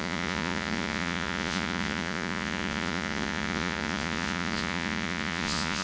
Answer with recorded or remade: remade